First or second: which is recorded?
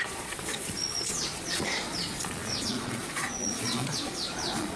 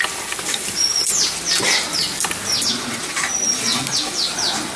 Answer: second